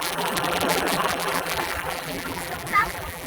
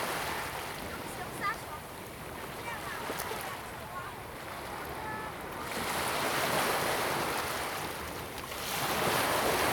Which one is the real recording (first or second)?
second